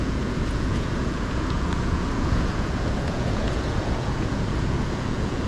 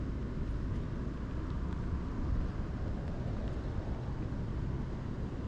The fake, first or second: first